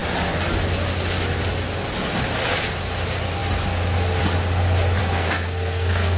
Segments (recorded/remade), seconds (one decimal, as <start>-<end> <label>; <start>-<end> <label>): 0.0-5.0 recorded; 5.0-6.2 remade